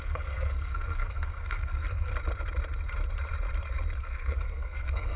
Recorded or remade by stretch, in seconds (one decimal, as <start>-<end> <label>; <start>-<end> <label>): 0.0-2.1 remade; 2.1-4.0 recorded; 4.0-5.2 remade